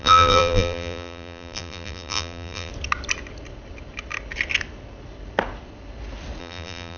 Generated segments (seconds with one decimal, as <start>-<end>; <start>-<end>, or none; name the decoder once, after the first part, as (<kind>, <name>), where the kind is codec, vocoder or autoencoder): 0.0-2.7 (vocoder, BigVGAN v2); 6.4-7.0